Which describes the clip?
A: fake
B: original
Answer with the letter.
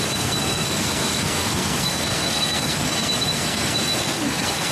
A